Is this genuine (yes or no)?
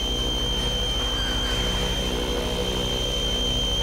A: yes